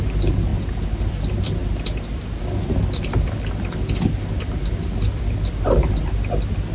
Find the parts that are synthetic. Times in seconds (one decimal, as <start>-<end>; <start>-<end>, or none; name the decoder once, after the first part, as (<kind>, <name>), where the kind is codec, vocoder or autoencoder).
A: none